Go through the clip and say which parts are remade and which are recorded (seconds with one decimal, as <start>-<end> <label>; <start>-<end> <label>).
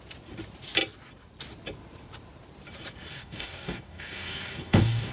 0.0-3.1 recorded; 3.1-5.1 remade